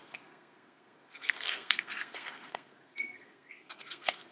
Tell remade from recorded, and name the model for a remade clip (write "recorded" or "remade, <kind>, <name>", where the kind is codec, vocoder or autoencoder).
remade, codec, SNAC